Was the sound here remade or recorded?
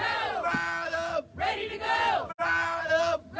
recorded